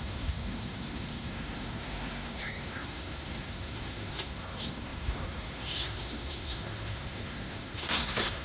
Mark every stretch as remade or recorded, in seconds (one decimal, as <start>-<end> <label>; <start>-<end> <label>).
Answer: 0.0-8.4 remade